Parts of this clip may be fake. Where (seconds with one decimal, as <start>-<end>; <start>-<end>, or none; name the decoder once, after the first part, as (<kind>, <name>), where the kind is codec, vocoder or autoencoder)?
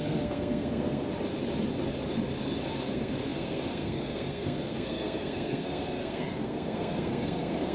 0.0-1.1 (codec, SNAC); 2.8-7.7